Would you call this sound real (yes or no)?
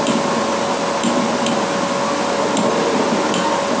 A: yes